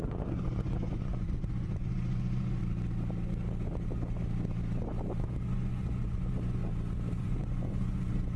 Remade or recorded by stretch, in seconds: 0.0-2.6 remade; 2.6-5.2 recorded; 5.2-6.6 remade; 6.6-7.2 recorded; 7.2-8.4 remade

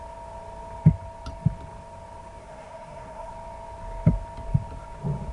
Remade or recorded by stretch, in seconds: 0.0-2.4 recorded; 2.4-3.3 remade; 3.3-5.3 recorded

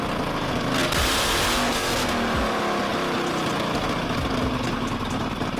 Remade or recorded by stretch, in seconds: 0.0-2.9 recorded; 2.9-4.0 remade; 4.0-5.6 recorded